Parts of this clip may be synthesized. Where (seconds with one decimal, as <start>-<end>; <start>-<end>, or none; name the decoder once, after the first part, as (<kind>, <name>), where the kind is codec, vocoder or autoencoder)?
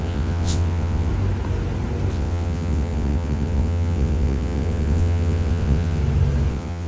0.0-1.1 (vocoder, WaveNeXt); 2.1-6.0; 6.5-6.9